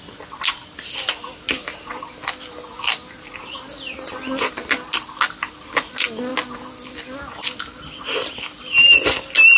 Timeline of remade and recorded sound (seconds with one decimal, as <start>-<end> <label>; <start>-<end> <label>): 0.0-9.6 recorded